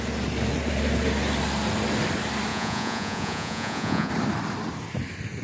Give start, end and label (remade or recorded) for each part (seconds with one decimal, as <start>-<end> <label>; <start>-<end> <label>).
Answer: 0.0-2.5 recorded; 2.5-4.1 remade; 4.1-5.4 recorded